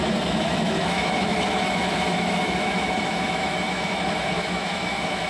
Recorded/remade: remade